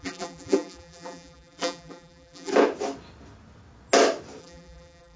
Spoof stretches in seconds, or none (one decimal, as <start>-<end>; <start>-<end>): 0.0-2.5; 4.4-5.2